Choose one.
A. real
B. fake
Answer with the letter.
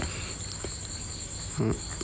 A